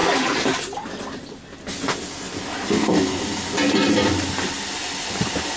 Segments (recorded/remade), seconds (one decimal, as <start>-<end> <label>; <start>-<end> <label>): 0.0-5.6 recorded